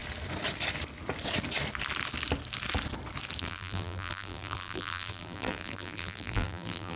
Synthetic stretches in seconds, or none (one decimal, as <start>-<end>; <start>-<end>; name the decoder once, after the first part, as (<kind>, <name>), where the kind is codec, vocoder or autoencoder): 3.4-7.0 (vocoder, BigVGAN v2)